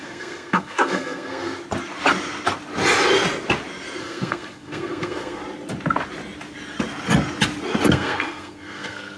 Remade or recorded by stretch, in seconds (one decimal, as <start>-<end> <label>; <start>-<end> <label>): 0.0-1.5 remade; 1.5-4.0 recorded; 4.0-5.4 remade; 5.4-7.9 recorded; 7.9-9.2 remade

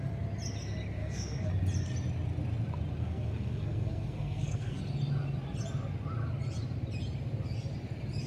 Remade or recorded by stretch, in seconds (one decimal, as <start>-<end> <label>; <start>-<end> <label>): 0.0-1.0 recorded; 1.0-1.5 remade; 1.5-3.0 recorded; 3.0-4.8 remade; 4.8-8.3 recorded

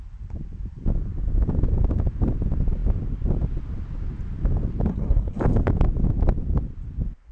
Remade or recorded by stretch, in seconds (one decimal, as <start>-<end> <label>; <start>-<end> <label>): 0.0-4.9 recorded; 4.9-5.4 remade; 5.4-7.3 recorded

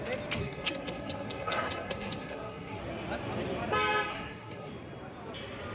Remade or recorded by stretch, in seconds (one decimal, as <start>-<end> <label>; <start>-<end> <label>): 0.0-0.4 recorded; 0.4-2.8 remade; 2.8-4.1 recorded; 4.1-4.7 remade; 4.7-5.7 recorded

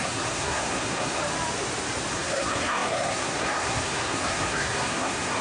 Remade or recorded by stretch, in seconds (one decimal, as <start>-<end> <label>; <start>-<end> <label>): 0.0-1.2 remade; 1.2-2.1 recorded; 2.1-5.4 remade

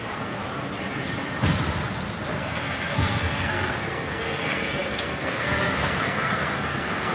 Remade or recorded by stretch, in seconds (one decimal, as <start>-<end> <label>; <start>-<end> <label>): 0.0-0.4 remade; 0.4-2.3 recorded; 2.3-7.1 remade

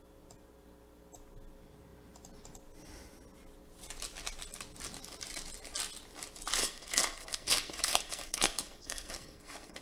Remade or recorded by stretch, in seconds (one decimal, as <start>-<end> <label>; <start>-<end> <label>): 0.0-6.6 recorded; 6.6-9.8 remade

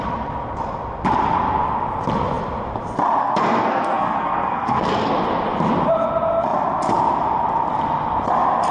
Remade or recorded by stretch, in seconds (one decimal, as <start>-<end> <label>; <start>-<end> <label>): 0.0-3.2 recorded; 3.2-5.1 remade; 5.1-8.7 recorded